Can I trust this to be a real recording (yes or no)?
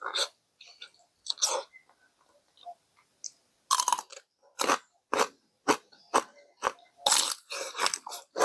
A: yes